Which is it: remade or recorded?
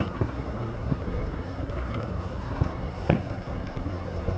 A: remade